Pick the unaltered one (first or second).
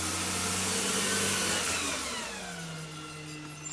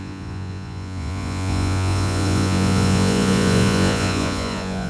first